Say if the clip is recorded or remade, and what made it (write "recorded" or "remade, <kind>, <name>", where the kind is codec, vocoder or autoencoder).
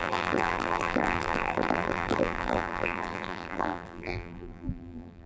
remade, vocoder, BigVGAN v2